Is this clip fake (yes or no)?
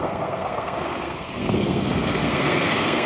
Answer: yes